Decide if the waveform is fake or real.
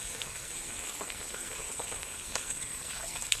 fake